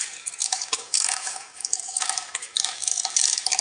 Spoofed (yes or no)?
yes